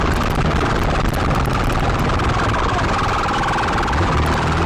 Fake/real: real